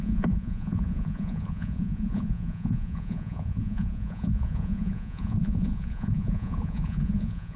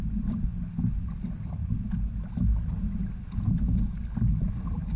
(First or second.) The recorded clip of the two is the second